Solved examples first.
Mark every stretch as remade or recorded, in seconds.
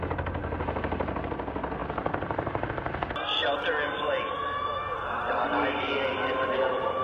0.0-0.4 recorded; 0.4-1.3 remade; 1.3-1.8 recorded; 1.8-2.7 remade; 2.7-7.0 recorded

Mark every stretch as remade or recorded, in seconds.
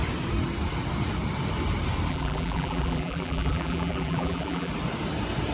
0.0-2.1 recorded; 2.1-4.7 remade; 4.7-5.5 recorded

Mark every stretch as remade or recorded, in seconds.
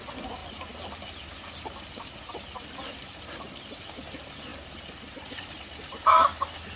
0.0-6.8 recorded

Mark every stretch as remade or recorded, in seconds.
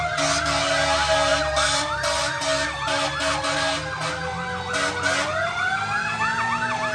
0.0-6.9 recorded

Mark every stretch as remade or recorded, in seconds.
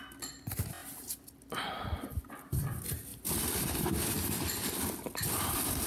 0.0-3.1 recorded; 3.1-3.8 remade; 3.8-5.9 recorded